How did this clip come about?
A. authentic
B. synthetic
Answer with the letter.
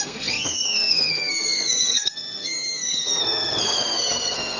B